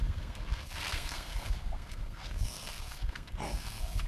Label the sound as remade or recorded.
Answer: remade